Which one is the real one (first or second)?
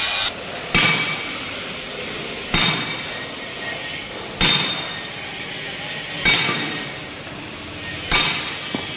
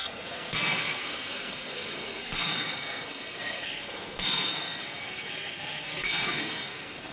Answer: first